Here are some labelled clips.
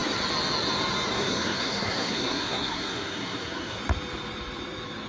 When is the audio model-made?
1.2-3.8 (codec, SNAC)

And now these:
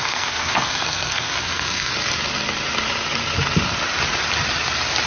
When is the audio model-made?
0.0-1.9 (codec, SNAC)

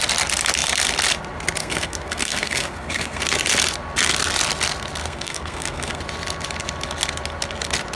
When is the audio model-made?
1.6-3.2 (codec, SNAC); 5.0-6.0